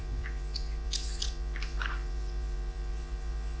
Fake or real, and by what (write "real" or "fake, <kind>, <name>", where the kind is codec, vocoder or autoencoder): fake, vocoder, Vocos